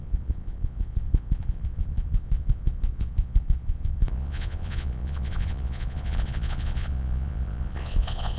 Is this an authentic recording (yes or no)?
no